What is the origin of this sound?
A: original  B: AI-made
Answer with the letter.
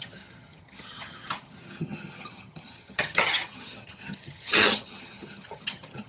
B